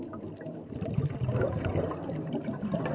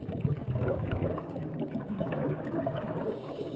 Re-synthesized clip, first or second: second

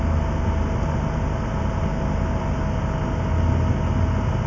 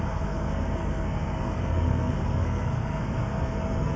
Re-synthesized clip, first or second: second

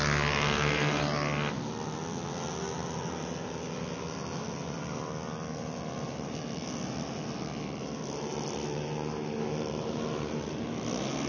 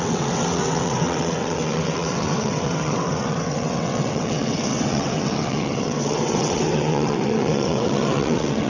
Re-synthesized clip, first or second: second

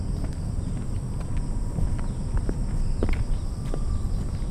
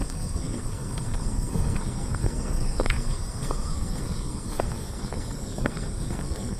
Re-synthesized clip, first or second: second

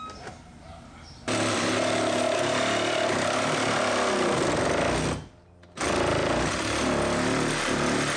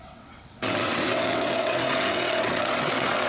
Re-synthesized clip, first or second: second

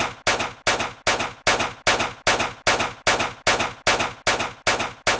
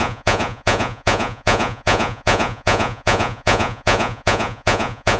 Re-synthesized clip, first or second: second